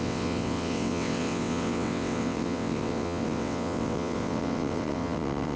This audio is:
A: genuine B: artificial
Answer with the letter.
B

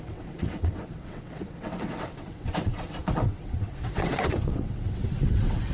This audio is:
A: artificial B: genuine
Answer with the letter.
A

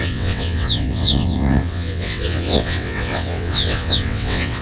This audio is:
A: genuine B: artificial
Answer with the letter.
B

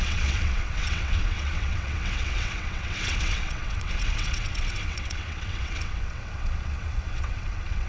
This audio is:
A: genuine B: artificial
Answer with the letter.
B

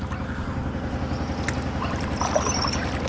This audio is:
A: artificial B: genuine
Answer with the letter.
B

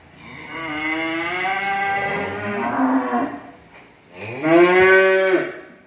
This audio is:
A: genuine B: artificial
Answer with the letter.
A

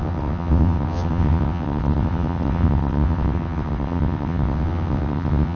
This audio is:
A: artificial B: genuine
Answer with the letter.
A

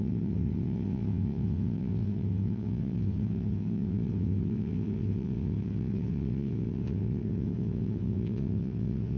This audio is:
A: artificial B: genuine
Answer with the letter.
A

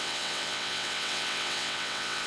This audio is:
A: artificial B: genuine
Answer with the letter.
A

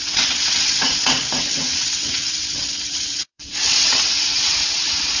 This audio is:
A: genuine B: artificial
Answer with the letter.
B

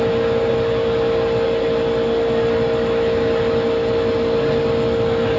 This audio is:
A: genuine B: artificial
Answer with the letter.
A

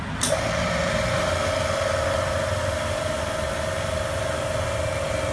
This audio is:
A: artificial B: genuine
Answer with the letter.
B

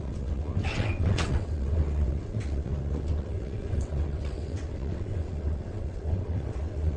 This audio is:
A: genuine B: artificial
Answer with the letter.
B